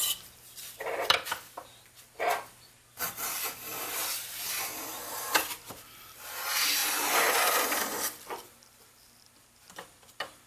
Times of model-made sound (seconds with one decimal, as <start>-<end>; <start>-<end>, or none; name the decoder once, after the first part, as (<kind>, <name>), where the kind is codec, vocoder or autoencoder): 0.0-3.7 (vocoder, BigVGAN v2); 5.4-10.5